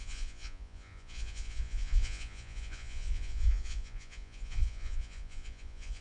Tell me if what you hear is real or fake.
fake